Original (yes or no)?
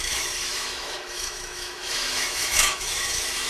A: no